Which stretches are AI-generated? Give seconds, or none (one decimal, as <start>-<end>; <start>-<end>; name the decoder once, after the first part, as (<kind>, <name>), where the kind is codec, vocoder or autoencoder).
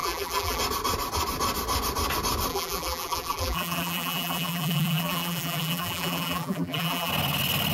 0.0-0.6 (vocoder, BigVGAN v2); 2.5-7.1